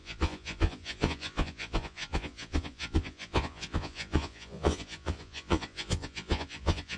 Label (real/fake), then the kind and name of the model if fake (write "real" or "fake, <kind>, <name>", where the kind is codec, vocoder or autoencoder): fake, vocoder, Vocos